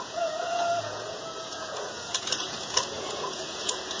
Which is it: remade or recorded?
remade